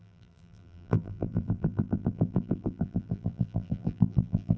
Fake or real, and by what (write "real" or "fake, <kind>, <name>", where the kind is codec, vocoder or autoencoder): fake, vocoder, BigVGAN v2